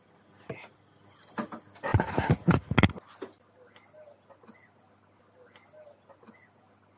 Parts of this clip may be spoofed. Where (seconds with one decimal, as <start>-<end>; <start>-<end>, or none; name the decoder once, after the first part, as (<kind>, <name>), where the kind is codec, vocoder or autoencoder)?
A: none